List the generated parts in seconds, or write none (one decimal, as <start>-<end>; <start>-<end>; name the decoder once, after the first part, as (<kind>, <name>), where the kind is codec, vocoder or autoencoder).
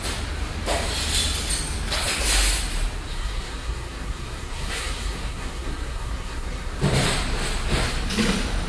3.1-6.7 (codec, SNAC)